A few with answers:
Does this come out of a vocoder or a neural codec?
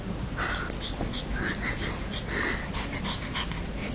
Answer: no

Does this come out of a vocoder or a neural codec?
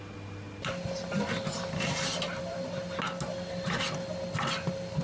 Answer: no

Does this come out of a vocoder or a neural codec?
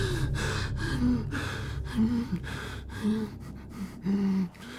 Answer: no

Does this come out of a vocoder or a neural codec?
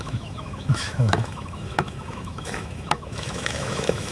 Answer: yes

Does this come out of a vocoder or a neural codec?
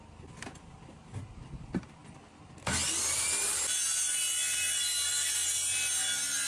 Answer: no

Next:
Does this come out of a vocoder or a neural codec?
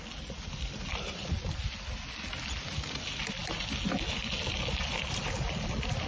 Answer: no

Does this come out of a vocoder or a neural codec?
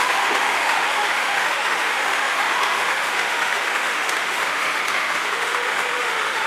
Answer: yes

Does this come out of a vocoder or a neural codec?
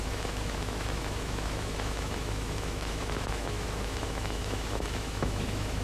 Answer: yes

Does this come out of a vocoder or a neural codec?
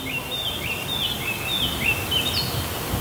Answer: no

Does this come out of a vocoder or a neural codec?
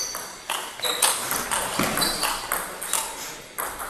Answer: no